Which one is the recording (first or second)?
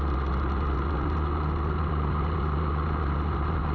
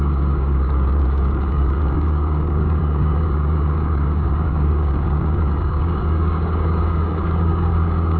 first